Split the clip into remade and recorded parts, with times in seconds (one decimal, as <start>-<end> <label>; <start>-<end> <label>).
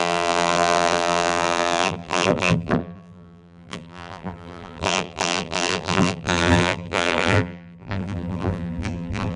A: 0.0-9.4 remade